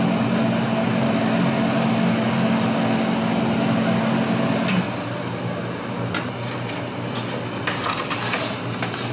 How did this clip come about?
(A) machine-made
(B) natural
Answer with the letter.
B